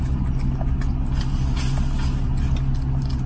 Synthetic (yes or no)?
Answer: no